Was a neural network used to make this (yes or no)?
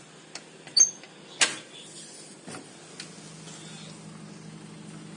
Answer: no